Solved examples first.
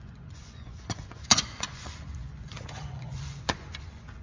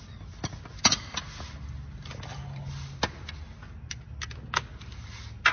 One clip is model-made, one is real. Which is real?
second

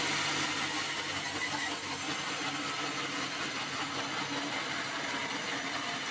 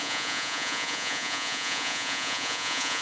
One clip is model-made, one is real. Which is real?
first